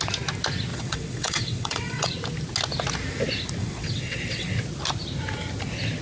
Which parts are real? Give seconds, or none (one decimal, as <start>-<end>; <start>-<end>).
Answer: 0.0-0.7; 2.1-3.6; 4.5-6.0